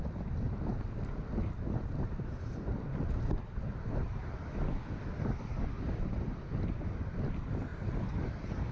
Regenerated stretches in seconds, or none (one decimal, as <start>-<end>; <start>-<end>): none